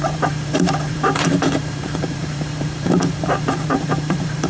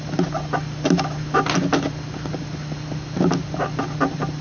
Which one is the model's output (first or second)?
first